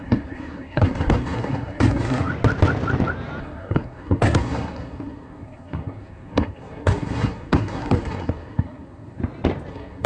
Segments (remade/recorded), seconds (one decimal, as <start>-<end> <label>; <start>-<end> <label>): 0.0-2.3 remade; 2.3-3.4 recorded; 3.4-9.2 remade; 9.2-9.7 recorded; 9.7-10.1 remade